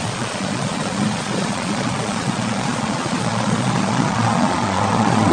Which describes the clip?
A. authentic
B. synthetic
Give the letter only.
B